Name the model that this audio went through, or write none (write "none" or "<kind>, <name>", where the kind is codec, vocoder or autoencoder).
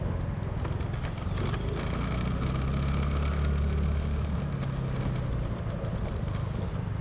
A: none